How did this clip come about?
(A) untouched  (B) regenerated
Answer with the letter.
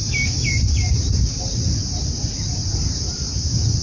B